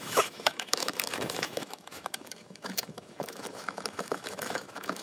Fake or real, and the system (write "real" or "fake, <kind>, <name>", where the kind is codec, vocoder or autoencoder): fake, autoencoder, DAC-VAE